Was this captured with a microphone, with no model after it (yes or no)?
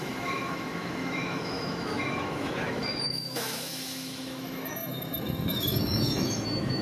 no